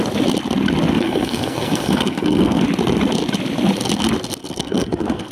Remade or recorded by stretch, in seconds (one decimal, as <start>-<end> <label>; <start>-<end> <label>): 0.0-0.9 recorded; 0.9-2.6 remade; 2.6-4.4 recorded; 4.4-5.3 remade